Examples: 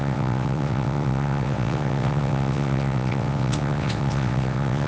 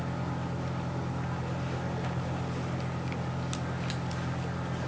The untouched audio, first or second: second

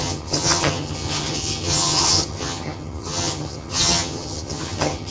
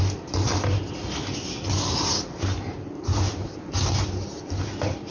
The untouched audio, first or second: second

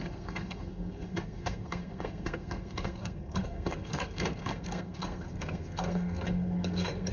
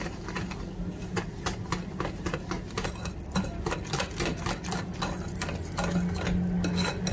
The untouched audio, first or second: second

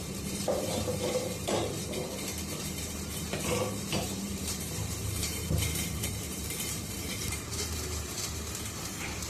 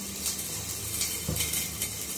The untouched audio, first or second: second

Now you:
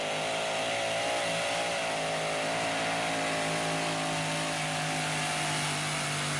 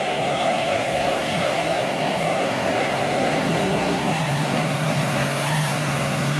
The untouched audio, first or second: first